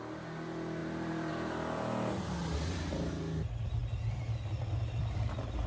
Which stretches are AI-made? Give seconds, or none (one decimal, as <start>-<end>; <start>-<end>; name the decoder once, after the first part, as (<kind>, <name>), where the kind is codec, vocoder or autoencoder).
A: none